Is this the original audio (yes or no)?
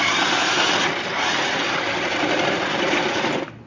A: yes